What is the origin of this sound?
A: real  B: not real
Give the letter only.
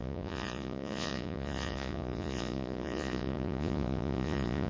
B